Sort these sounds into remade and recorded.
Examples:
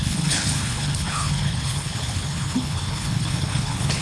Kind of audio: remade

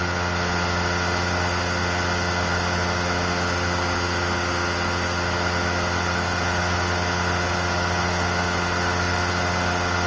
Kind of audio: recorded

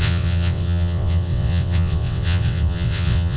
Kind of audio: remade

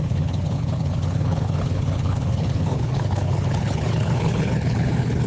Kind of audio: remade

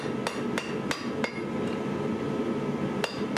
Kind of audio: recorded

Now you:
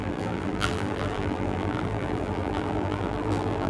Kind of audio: remade